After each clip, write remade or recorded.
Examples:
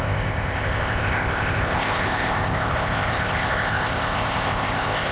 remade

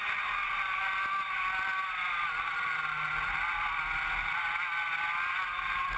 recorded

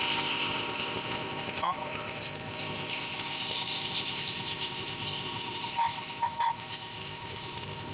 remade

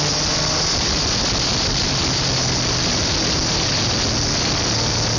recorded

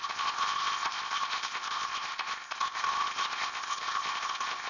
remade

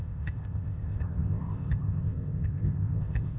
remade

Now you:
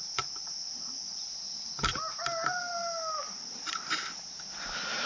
recorded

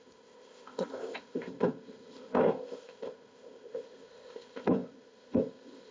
remade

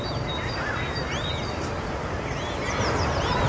recorded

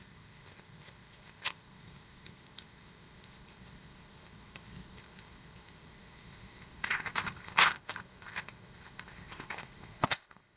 remade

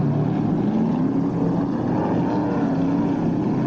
recorded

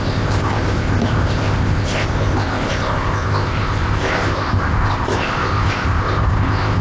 remade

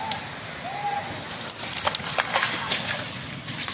recorded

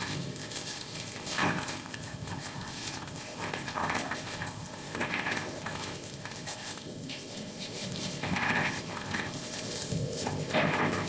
remade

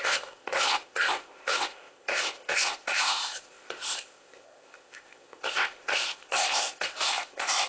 remade